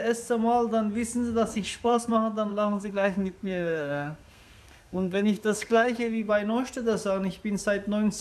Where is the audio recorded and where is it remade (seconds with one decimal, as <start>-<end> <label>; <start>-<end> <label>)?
0.0-1.5 recorded; 1.5-2.1 remade; 2.1-2.5 recorded; 2.5-6.3 remade; 6.3-8.2 recorded